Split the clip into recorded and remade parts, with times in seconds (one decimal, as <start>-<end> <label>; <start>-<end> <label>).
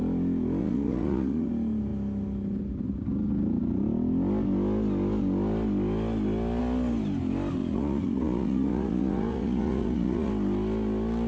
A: 0.0-0.6 recorded; 0.6-1.5 remade; 1.5-7.6 recorded; 7.6-10.3 remade; 10.3-11.3 recorded